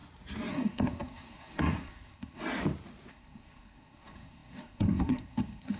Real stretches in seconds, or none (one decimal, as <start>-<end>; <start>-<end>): 0.0-0.5; 2.4-3.1